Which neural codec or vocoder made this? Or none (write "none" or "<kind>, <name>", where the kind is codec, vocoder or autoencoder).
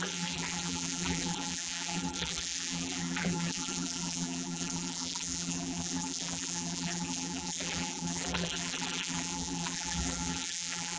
vocoder, BigVGAN v2